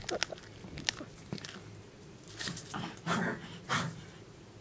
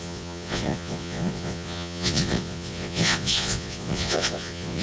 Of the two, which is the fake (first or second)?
second